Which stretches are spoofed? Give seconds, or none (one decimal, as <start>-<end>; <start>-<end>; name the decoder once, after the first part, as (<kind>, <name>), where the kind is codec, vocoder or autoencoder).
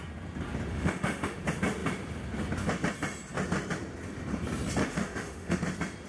0.7-1.4 (autoencoder, DAC-VAE); 4.8-5.6